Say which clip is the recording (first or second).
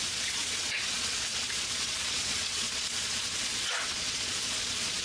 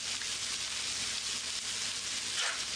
second